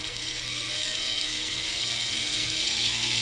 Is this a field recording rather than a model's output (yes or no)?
no